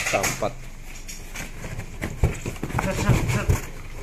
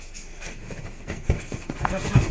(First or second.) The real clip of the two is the first